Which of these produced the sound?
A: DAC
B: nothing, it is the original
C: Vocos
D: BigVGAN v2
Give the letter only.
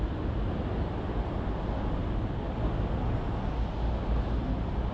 B